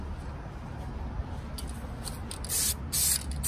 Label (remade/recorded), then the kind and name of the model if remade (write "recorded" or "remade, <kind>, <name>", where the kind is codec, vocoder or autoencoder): recorded